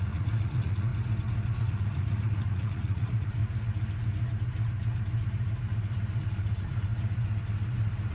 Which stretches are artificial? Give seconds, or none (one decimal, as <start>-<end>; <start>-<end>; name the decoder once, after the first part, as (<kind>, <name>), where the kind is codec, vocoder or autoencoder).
0.0-0.9 (vocoder, Vocos); 1.6-3.4; 6.2-6.9